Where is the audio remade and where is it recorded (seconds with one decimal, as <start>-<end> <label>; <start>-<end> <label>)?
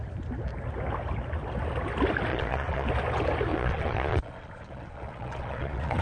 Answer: 0.0-2.3 recorded; 2.3-2.9 remade; 2.9-3.5 recorded; 3.5-6.0 remade